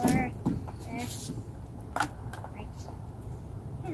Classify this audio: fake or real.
real